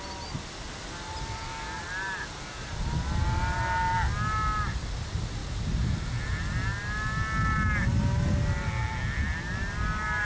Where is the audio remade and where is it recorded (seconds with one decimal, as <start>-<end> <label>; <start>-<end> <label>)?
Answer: 0.0-10.2 recorded